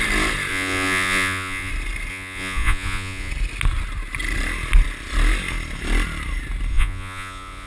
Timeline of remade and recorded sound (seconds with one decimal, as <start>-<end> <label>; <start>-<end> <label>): 0.0-0.5 recorded; 0.5-1.7 remade; 1.7-2.1 recorded; 2.1-3.3 remade; 3.3-6.7 recorded; 6.7-7.7 remade